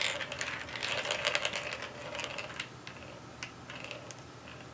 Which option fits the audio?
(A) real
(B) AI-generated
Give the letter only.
A